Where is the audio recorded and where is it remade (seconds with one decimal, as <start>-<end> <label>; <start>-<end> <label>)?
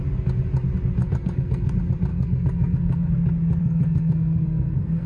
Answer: 0.0-1.0 recorded; 1.0-1.7 remade; 1.7-2.1 recorded; 2.1-3.1 remade; 3.1-3.6 recorded; 3.6-5.1 remade